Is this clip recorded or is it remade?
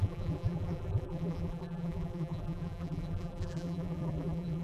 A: remade